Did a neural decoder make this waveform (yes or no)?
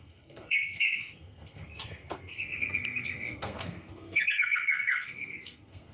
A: yes